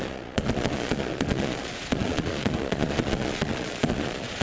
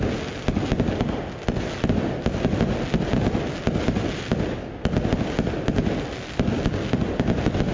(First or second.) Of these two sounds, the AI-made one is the first